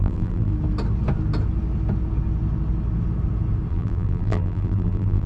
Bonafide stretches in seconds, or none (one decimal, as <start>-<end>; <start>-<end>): 0.5-3.7